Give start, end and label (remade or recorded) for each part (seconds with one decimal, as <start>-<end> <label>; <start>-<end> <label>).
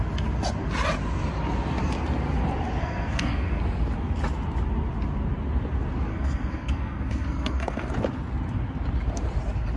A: 0.0-2.8 recorded; 2.8-3.6 remade; 3.6-6.1 recorded; 6.1-7.9 remade; 7.9-9.8 recorded